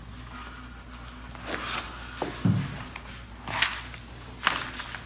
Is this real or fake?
real